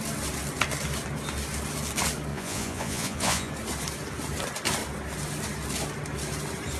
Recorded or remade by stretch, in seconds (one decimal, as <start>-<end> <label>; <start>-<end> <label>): 0.0-2.3 recorded; 2.3-3.5 remade; 3.5-6.8 recorded